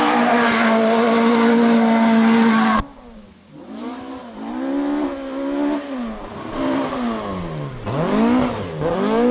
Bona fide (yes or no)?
yes